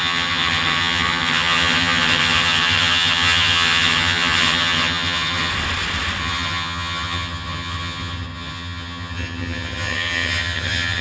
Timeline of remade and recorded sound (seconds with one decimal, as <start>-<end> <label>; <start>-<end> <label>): 0.0-5.5 remade; 5.5-6.2 recorded; 6.2-11.0 remade